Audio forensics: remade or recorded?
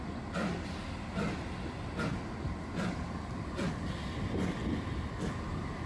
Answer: recorded